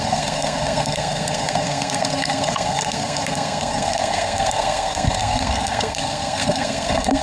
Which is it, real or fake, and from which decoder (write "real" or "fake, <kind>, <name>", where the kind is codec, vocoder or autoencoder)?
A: fake, codec, SNAC